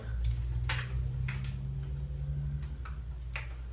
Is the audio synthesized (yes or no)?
no